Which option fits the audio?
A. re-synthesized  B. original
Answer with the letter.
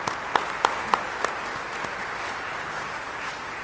B